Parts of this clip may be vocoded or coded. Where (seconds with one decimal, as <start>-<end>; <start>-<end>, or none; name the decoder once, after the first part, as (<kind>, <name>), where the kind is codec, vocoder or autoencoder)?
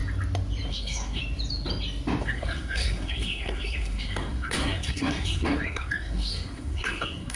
0.7-1.2 (codec, SNAC); 2.2-7.3